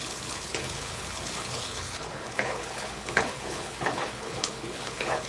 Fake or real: fake